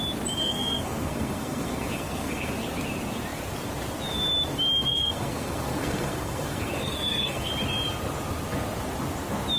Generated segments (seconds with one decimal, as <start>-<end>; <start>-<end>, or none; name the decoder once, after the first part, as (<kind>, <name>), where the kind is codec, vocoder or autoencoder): 0.4-2.5 (codec, SNAC); 4.9-7.5